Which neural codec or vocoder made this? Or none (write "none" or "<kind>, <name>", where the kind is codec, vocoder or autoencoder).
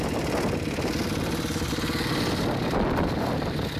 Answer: none